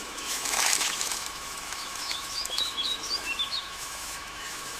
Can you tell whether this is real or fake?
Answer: fake